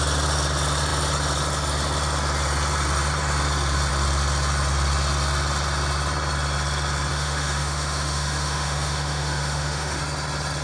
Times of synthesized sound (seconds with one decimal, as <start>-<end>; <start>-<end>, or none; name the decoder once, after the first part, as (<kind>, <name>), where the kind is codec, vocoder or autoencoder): 7.1-10.0 (autoencoder, DAC-VAE)